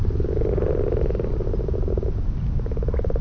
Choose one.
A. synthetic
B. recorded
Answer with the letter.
B